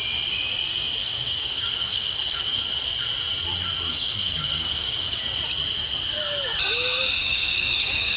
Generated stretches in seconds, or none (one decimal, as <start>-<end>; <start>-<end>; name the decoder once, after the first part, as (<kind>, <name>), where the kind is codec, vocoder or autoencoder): 1.0-2.6 (codec, DAC); 3.9-5.2; 7.2-8.2